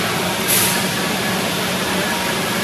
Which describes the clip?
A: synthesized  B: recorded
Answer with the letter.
B